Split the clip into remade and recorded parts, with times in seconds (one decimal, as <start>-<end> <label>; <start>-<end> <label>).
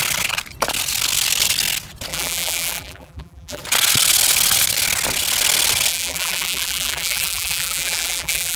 0.0-2.1 recorded; 2.1-3.6 remade; 3.6-5.9 recorded; 5.9-8.6 remade